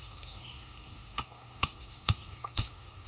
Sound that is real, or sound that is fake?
fake